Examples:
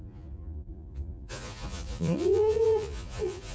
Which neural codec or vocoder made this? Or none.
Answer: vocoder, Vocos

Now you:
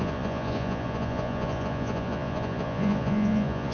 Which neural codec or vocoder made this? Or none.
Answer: vocoder, Vocos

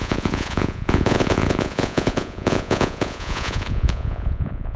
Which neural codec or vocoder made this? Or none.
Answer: vocoder, Vocos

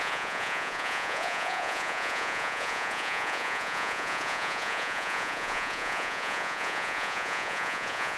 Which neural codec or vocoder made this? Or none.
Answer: vocoder, Vocos